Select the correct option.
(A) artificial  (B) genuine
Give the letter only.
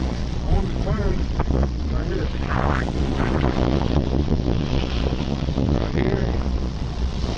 A